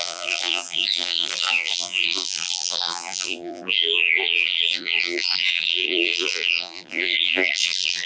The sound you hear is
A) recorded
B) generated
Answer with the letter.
B